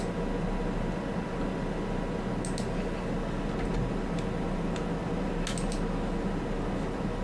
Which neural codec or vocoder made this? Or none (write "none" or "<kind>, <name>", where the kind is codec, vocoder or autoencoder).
none